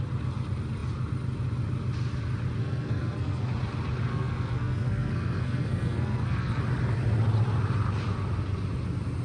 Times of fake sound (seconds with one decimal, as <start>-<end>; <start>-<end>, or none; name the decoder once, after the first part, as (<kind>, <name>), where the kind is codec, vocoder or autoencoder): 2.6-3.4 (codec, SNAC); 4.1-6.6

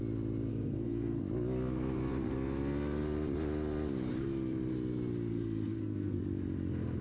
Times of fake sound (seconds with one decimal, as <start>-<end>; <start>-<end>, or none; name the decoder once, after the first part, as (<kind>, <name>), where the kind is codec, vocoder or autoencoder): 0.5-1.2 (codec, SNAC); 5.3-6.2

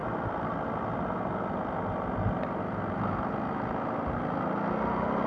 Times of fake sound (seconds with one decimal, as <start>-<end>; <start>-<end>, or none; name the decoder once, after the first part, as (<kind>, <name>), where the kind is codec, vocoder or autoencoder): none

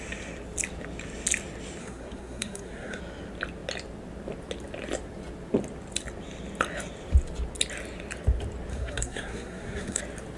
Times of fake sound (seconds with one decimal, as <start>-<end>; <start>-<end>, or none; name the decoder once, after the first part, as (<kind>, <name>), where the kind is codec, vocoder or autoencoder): 1.8-3.0 (codec, SNAC); 8.7-10.0